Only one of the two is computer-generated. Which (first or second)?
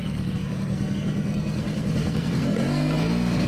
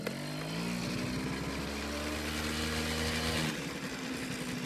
first